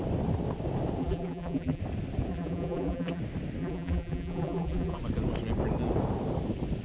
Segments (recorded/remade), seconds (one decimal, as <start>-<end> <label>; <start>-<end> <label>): 0.0-1.0 recorded; 1.0-1.8 remade; 1.8-2.3 recorded; 2.3-3.2 remade; 3.2-3.6 recorded; 3.6-5.0 remade; 5.0-6.8 recorded